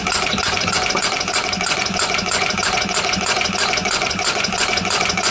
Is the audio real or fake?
fake